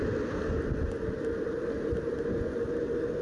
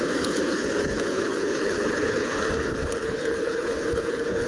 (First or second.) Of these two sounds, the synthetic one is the second